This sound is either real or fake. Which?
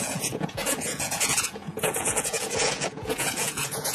fake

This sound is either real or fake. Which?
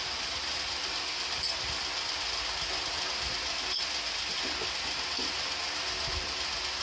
real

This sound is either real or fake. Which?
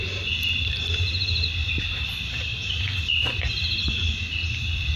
real